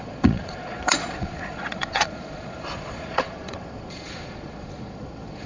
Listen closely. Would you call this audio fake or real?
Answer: fake